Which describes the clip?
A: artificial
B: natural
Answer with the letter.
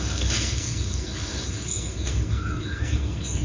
A